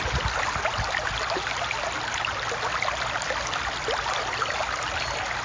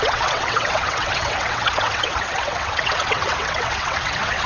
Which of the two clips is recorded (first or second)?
first